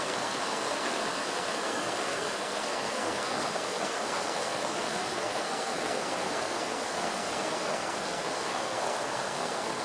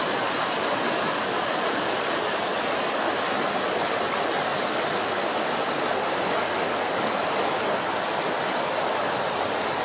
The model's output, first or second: first